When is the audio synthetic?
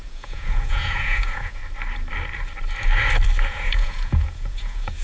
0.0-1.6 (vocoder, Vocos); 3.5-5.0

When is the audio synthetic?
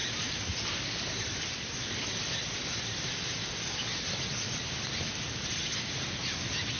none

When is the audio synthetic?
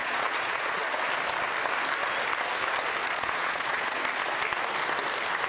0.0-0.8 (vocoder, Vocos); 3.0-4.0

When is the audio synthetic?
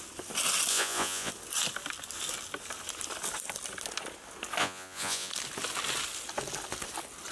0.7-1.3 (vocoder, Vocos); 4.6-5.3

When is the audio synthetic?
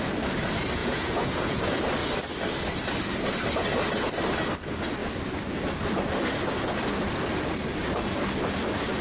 0.8-1.6 (vocoder, Vocos)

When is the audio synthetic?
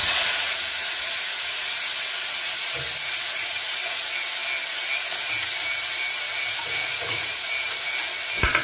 0.0-2.7 (vocoder, Vocos); 3.3-3.8; 6.8-7.5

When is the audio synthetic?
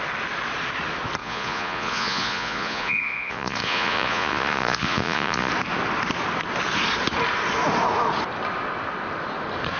1.2-5.5 (vocoder, Vocos)